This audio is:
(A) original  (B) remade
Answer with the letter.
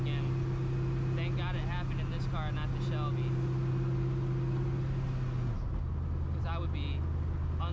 A